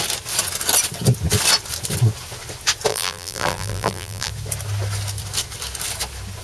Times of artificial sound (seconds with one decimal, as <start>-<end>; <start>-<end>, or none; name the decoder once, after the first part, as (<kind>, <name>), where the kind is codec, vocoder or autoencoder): 2.9-4.3 (vocoder, BigVGAN v2)